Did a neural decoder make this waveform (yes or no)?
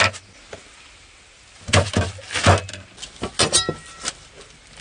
no